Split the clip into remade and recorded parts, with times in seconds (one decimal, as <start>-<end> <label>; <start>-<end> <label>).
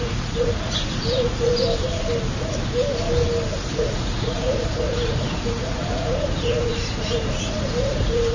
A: 0.0-1.5 remade; 1.5-3.6 recorded; 3.6-8.3 remade